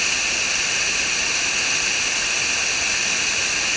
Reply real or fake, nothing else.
real